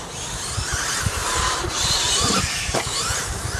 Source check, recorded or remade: remade